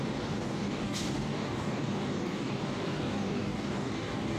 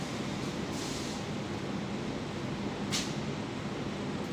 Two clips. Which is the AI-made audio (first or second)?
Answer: first